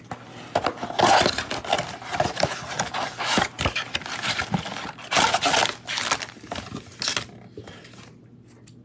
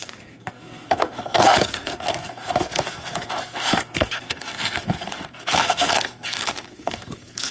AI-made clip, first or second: second